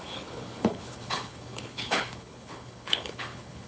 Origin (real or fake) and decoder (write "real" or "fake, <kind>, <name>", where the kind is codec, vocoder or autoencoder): fake, codec, HILCodec